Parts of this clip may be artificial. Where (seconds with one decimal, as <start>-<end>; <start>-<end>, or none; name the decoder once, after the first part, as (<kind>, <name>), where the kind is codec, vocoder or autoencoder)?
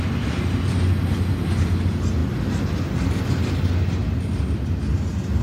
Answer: none